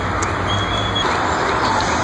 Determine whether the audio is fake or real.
real